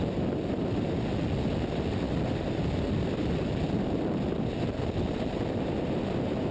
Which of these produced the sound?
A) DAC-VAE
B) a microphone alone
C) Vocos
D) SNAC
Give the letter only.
B